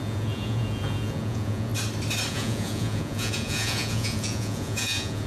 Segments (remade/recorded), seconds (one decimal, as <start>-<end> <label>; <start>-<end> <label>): 0.0-1.7 remade; 1.7-2.3 recorded; 2.3-5.3 remade